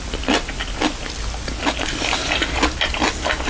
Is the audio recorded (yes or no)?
yes